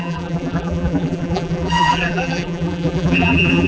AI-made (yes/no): yes